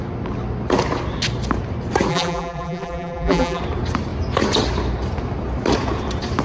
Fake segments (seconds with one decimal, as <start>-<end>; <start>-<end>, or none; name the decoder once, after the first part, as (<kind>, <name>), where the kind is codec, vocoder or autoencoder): 2.1-3.6 (vocoder, BigVGAN v2)

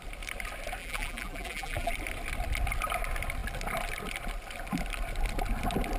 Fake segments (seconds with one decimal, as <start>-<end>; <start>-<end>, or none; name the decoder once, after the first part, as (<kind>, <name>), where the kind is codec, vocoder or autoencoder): 0.8-1.9 (vocoder, BigVGAN v2)